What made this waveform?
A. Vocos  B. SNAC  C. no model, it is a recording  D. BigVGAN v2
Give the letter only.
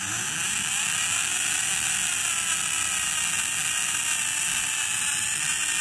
C